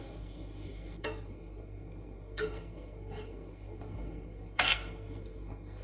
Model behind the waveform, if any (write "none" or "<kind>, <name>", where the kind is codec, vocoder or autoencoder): codec, SNAC